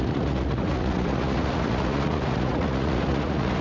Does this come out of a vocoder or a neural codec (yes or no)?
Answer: yes